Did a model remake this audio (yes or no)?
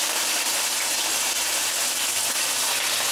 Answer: no